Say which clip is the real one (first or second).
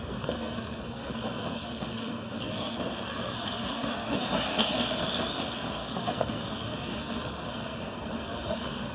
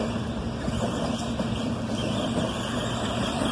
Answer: second